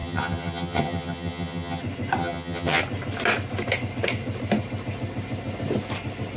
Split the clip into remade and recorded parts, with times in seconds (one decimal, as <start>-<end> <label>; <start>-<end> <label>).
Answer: 0.0-1.8 remade; 1.8-2.2 recorded; 2.2-2.8 remade; 2.8-6.4 recorded